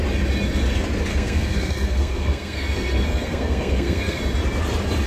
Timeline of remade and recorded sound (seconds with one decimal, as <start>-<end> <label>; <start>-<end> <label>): 0.0-1.1 recorded; 1.1-4.2 remade; 4.2-5.1 recorded